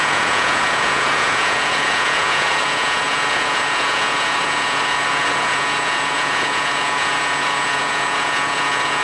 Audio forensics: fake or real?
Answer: fake